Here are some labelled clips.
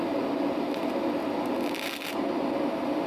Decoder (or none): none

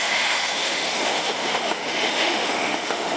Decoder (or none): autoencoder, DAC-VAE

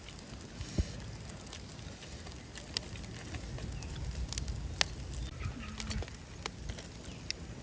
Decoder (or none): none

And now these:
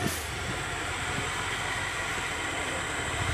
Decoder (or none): none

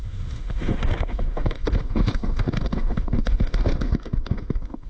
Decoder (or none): autoencoder, DAC-VAE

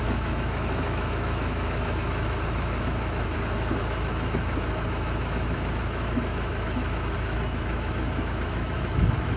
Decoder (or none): autoencoder, DAC-VAE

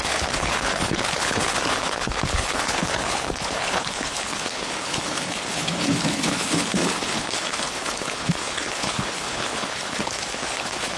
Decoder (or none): codec, HILCodec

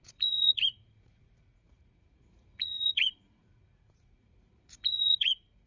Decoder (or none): vocoder, Vocos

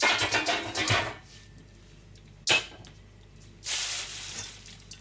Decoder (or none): none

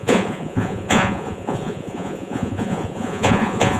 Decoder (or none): vocoder, Vocos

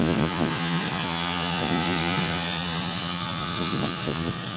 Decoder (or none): vocoder, Vocos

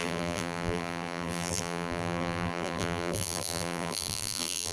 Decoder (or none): vocoder, BigVGAN v2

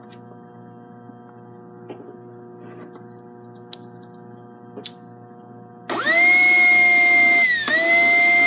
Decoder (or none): none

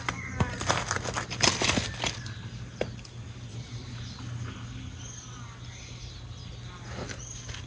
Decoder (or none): none